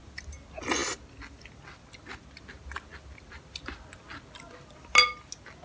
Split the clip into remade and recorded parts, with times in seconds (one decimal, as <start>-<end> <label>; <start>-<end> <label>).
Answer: 0.0-5.6 recorded